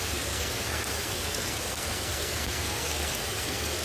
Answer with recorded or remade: remade